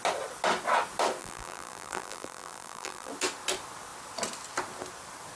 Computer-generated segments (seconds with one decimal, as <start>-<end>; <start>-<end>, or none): 1.2-3.1